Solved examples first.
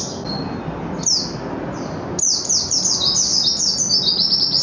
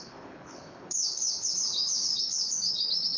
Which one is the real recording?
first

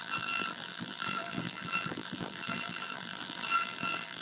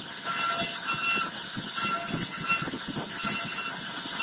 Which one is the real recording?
second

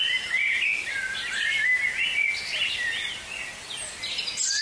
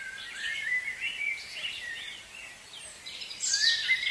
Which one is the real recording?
first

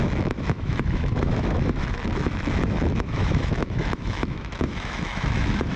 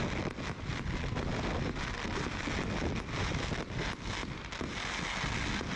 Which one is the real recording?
second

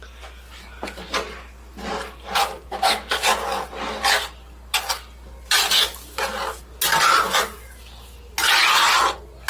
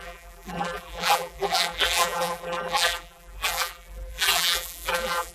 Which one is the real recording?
first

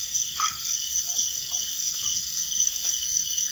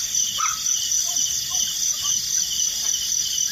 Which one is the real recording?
second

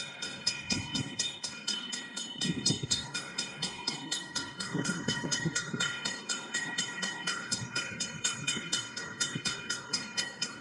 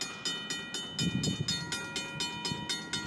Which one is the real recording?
second